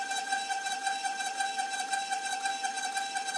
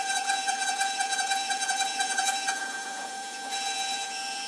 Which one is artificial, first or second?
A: second